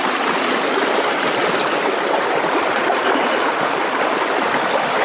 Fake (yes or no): no